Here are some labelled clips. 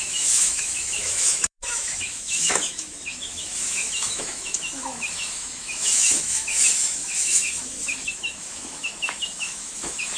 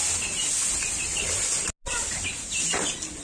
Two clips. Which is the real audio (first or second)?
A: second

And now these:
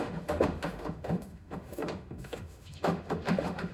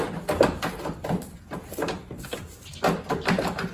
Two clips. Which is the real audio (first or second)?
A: second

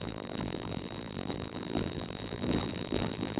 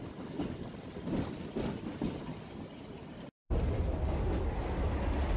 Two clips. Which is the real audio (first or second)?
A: second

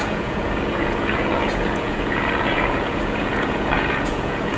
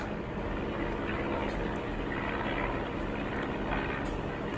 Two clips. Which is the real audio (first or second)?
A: second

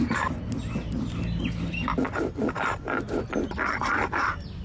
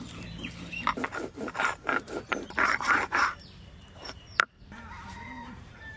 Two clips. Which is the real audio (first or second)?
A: first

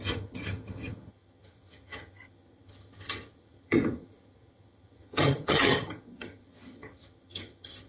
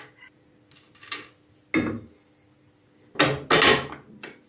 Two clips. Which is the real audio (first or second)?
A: second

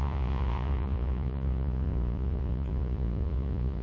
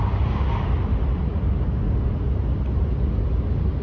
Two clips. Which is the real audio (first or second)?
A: second